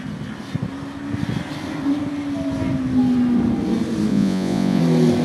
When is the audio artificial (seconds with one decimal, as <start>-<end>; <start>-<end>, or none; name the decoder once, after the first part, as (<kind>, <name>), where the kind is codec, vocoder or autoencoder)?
4.1-4.8 (vocoder, Vocos)